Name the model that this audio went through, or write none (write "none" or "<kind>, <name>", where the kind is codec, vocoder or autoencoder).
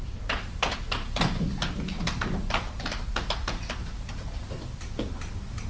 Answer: none